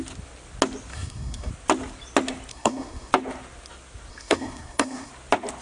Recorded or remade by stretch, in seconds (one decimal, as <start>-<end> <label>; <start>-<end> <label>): 0.0-0.9 recorded; 0.9-1.5 remade; 1.5-2.5 recorded; 2.5-3.1 remade; 3.1-4.1 recorded; 4.1-5.1 remade; 5.1-5.6 recorded

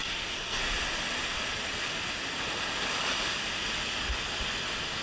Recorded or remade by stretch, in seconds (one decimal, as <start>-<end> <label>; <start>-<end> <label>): 0.0-0.6 remade; 0.6-5.0 recorded

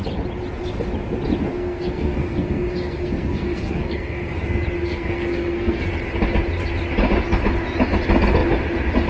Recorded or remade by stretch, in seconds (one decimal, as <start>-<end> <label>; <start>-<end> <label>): 0.0-1.5 recorded; 1.5-4.3 remade; 4.3-4.8 recorded; 4.8-5.8 remade; 5.8-9.1 recorded

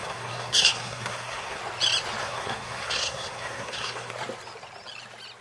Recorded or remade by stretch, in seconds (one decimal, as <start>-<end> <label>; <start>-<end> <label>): 0.0-1.6 remade; 1.6-2.2 recorded; 2.2-4.1 remade; 4.1-5.4 recorded

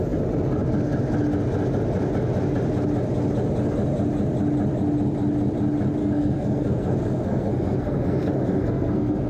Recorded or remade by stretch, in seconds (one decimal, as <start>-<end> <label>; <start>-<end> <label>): 0.0-6.0 recorded; 6.0-9.3 remade

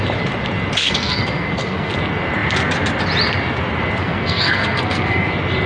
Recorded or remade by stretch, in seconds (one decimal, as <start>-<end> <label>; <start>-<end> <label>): 0.0-0.8 recorded; 0.8-1.9 remade; 1.9-4.0 recorded; 4.0-5.3 remade; 5.3-5.7 recorded